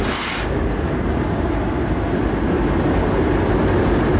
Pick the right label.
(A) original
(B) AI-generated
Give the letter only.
A